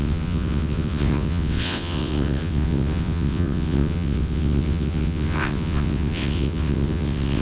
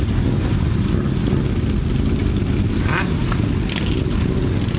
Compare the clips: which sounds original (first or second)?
second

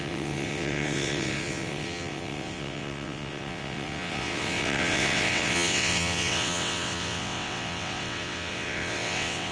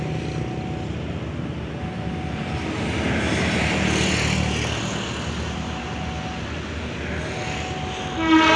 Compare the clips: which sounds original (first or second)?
second